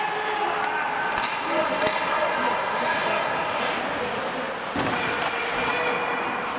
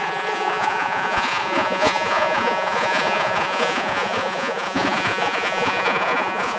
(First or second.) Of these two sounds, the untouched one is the first